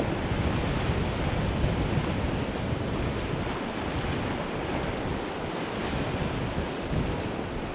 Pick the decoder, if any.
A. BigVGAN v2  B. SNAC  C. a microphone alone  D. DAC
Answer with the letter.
C